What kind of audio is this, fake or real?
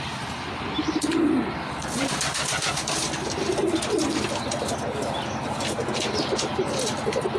fake